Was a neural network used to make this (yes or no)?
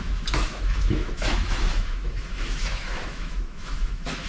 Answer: yes